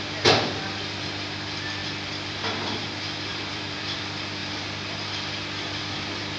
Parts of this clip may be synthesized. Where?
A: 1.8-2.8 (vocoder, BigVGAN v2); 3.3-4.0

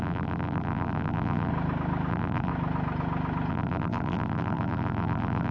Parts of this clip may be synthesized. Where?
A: 0.0-1.5 (vocoder, BigVGAN v2); 2.1-2.5; 3.5-5.5

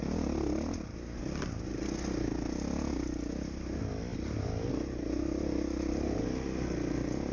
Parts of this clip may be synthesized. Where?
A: none

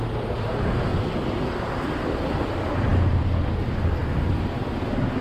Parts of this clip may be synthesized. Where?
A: none

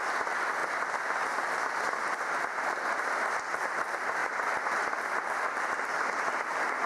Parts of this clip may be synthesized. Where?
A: none

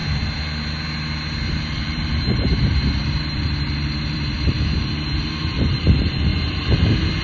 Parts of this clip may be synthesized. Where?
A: 1.5-7.2 (vocoder, BigVGAN v2)

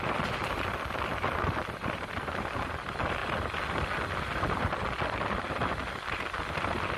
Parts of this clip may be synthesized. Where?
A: 0.0-3.2 (vocoder, BigVGAN v2); 4.2-5.8; 6.4-7.0